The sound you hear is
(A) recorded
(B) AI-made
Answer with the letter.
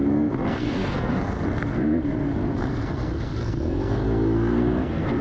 B